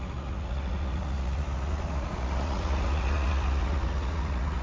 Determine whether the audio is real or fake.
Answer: fake